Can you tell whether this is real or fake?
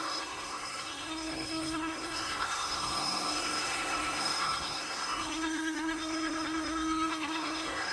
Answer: fake